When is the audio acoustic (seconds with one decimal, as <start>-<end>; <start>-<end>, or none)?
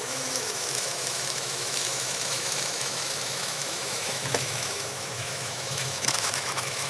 none